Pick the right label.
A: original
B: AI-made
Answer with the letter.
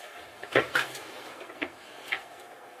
B